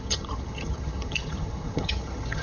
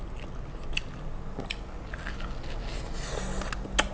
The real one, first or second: second